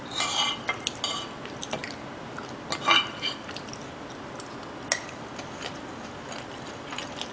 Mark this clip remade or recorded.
recorded